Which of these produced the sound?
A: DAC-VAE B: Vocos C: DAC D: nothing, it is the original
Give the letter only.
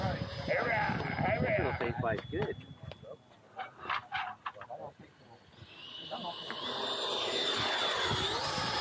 D